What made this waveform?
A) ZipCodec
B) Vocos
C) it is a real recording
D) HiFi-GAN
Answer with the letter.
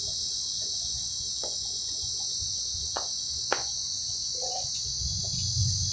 B